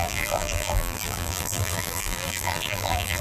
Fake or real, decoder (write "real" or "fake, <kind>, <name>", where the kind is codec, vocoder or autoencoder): fake, vocoder, BigVGAN v2